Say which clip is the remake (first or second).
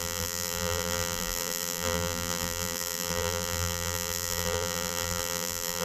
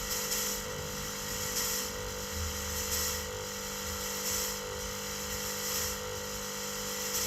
first